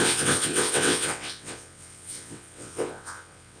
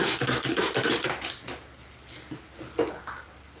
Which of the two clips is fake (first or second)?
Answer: first